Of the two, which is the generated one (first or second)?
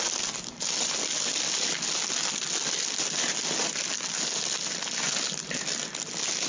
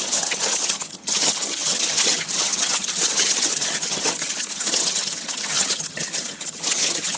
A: second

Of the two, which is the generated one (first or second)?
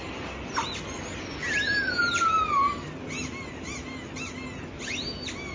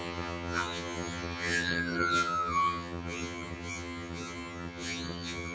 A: second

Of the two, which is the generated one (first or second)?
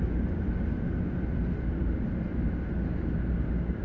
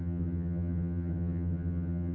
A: second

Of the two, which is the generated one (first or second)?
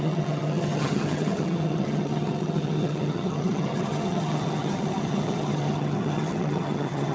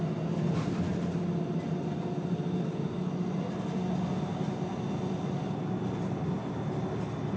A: first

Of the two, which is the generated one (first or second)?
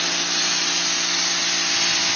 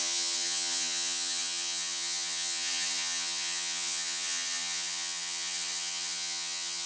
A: second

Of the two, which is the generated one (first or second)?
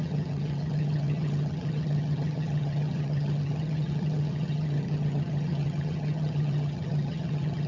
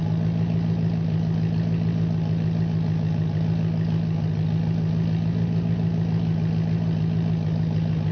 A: first